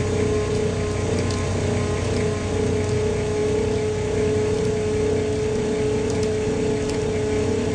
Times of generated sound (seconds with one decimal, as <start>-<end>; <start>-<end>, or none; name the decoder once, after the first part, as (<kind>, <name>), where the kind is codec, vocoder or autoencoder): none